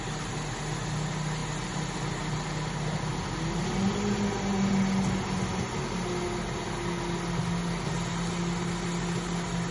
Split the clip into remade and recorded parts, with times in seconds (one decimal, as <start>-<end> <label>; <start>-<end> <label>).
0.0-9.7 recorded